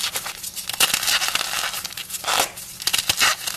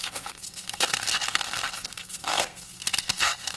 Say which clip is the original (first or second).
first